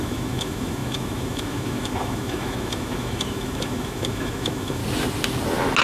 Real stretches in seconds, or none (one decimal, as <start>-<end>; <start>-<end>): 4.8-5.8